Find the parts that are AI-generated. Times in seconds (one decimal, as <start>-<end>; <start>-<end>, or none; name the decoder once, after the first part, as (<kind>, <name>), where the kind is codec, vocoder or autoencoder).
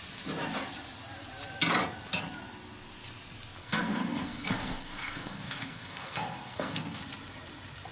3.6-7.0 (codec, SNAC)